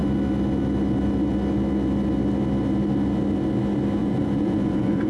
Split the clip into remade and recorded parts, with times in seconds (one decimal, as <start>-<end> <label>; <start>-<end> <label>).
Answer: 0.0-4.0 recorded; 4.0-5.1 remade